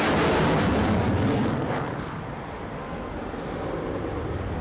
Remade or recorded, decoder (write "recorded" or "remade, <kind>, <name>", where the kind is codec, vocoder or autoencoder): recorded